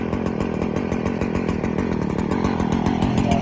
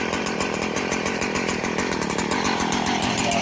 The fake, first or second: second